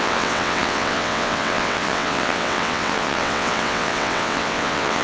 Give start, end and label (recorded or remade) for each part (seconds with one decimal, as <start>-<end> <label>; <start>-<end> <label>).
0.0-5.0 remade